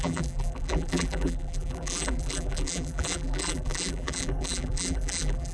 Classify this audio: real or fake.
fake